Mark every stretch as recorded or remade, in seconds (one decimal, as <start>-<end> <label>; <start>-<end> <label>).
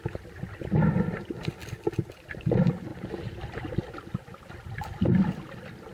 0.0-5.9 recorded